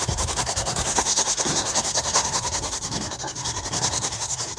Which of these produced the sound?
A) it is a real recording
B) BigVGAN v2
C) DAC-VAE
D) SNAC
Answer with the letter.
D